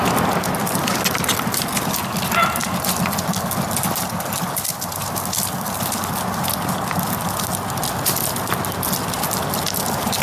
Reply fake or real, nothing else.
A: real